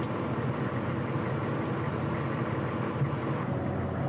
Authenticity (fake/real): real